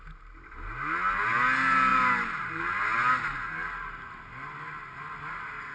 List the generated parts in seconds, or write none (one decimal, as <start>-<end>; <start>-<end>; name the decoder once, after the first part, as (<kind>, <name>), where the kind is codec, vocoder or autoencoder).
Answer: 1.9-2.6 (vocoder, BigVGAN v2)